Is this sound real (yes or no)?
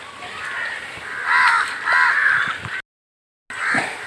yes